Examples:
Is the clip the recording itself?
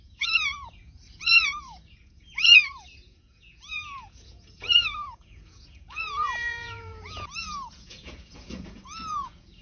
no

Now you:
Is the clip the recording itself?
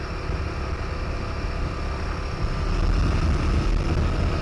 yes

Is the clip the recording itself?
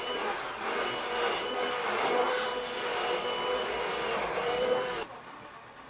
no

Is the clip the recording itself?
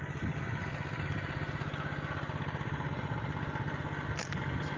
yes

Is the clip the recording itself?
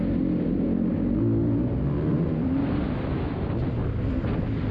yes